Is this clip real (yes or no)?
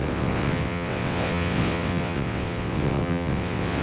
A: no